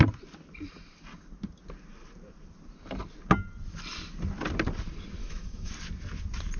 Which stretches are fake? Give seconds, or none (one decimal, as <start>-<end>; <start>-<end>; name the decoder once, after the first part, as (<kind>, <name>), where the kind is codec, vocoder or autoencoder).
5.2-5.7 (autoencoder, DAC-VAE)